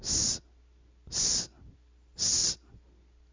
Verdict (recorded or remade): recorded